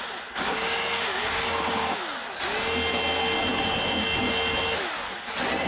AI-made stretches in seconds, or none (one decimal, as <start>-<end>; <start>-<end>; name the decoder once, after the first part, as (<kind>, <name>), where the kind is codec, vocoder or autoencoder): 0.5-2.0 (codec, DAC)